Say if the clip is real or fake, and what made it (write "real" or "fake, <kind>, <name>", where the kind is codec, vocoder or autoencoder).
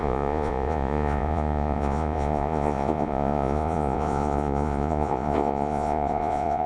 fake, vocoder, Vocos